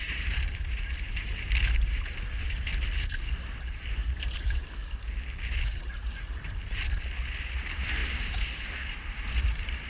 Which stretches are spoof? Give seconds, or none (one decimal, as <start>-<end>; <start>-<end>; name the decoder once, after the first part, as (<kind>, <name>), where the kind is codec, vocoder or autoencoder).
0.0-2.7 (vocoder, BigVGAN v2); 3.9-4.6; 7.4-9.9